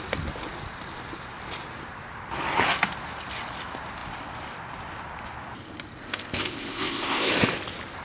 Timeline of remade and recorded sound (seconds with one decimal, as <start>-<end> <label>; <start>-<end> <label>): 0.0-6.0 recorded; 6.0-7.3 remade; 7.3-8.0 recorded